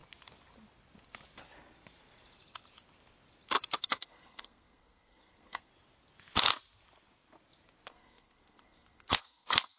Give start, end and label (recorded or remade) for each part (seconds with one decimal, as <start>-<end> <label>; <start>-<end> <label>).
0.0-3.8 recorded; 3.8-5.7 remade; 5.7-7.9 recorded; 7.9-9.8 remade